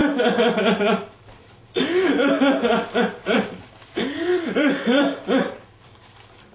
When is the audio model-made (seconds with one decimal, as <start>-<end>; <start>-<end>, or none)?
0.5-6.5